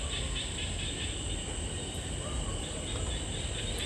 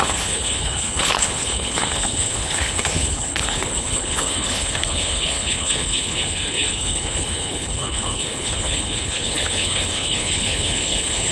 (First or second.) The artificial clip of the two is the second